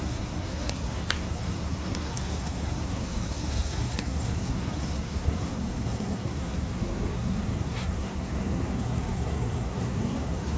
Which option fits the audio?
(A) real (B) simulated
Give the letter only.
B